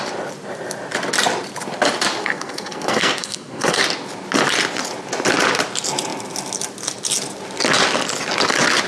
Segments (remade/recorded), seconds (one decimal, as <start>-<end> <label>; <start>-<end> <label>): 0.0-2.2 recorded; 2.2-3.8 remade; 3.8-8.9 recorded